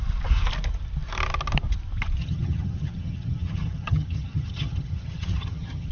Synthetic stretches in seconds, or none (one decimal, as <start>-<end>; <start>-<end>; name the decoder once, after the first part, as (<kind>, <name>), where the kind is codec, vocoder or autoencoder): 2.2-5.9 (vocoder, HiFi-GAN)